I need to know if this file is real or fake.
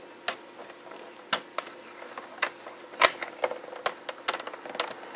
real